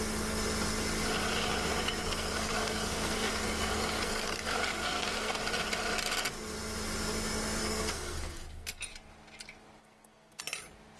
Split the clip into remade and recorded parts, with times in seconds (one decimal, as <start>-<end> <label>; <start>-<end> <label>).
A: 0.0-2.0 recorded; 2.0-5.4 remade; 5.4-7.6 recorded; 7.6-8.8 remade; 8.8-9.8 recorded; 9.8-10.4 remade; 10.4-11.0 recorded